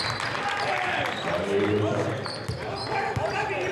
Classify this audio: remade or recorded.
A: recorded